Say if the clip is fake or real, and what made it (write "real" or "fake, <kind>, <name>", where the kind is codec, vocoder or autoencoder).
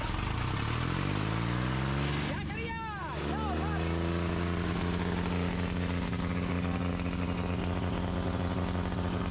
real